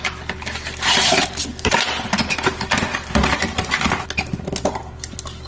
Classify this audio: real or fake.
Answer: real